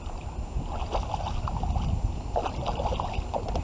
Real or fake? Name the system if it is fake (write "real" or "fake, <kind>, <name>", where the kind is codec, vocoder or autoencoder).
real